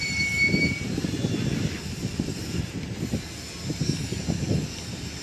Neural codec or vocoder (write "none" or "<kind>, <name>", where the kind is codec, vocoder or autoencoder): vocoder, BigVGAN v2